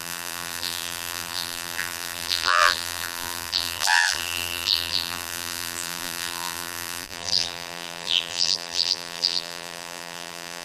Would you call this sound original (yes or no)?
no